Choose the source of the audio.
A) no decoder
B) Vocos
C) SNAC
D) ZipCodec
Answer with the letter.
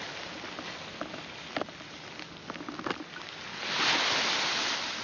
A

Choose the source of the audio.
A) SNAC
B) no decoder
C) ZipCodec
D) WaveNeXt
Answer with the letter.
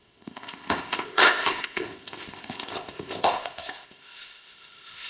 C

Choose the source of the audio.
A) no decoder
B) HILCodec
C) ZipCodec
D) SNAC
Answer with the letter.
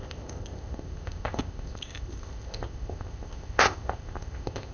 C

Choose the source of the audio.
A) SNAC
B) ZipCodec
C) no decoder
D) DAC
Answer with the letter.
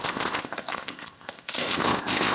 B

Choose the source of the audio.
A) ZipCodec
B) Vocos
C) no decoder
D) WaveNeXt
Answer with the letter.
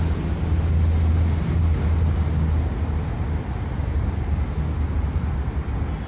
C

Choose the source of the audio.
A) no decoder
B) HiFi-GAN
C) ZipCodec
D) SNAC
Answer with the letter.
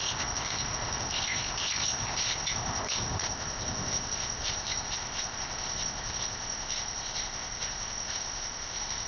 C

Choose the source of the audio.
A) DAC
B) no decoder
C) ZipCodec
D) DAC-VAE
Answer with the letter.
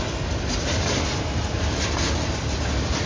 B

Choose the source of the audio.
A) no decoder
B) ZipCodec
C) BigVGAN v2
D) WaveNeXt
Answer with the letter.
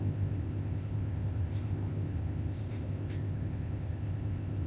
B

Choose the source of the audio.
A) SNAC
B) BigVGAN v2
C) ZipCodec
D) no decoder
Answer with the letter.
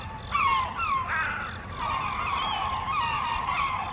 D